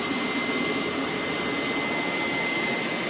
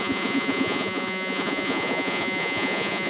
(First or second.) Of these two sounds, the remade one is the second